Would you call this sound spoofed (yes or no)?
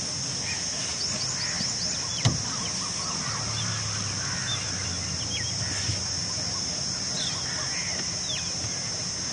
no